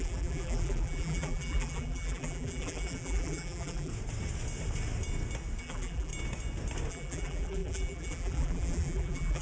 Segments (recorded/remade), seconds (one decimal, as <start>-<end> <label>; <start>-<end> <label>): 0.0-3.9 remade; 3.9-5.6 recorded; 5.6-6.1 remade; 6.1-6.9 recorded; 6.9-9.4 remade

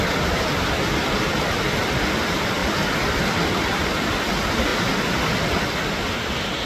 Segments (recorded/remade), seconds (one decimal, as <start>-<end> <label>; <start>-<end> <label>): 0.0-2.6 recorded; 2.6-3.2 remade; 3.2-4.7 recorded; 4.7-5.6 remade; 5.6-6.7 recorded